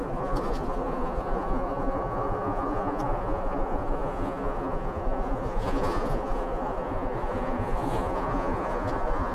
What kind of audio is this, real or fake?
fake